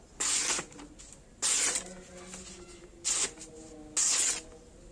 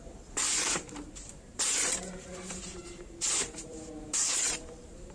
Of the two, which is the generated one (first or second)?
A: second